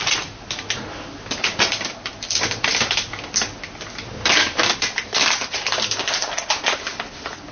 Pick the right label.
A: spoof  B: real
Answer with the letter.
B